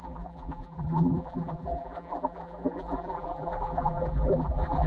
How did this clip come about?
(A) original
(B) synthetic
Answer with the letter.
B